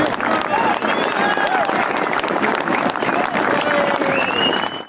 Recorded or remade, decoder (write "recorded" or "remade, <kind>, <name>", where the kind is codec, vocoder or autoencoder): recorded